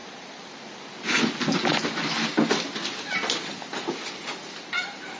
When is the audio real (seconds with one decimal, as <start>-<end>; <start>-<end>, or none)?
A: 0.0-5.2